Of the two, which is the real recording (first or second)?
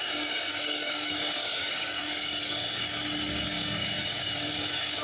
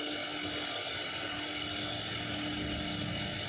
second